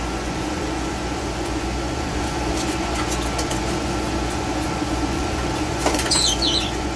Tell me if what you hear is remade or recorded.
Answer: remade